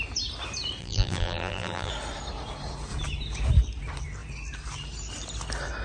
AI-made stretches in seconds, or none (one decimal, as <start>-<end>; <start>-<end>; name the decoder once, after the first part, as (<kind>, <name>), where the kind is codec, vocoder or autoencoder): 0.8-1.9 (vocoder, BigVGAN v2)